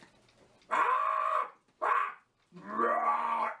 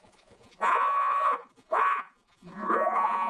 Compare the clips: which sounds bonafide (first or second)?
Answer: first